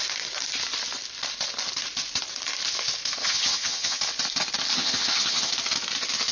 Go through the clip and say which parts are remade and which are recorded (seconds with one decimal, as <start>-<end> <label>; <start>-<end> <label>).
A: 0.0-3.2 recorded; 3.2-4.0 remade; 4.0-4.7 recorded; 4.7-5.5 remade; 5.5-6.3 recorded